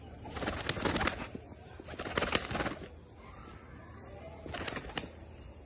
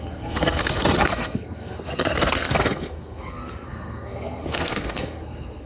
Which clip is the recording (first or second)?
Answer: first